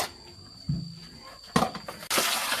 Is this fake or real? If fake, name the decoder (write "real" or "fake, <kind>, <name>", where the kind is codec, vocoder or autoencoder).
real